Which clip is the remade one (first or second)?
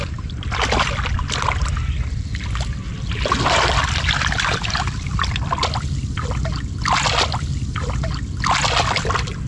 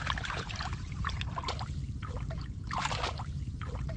second